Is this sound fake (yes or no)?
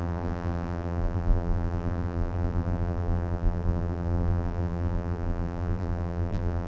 yes